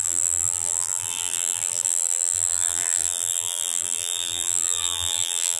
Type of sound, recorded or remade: remade